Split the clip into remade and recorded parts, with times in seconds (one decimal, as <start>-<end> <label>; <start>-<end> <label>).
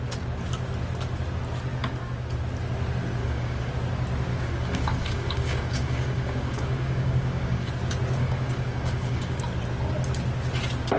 0.0-3.2 recorded; 3.2-3.7 remade; 3.7-4.3 recorded; 4.3-7.7 remade; 7.7-8.2 recorded; 8.2-9.4 remade; 9.4-11.0 recorded